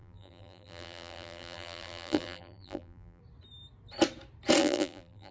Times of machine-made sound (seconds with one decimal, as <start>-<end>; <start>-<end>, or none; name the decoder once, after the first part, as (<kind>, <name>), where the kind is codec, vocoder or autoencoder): 0.0-3.2 (vocoder, BigVGAN v2); 4.6-5.3